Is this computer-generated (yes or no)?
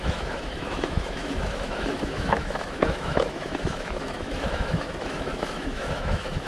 yes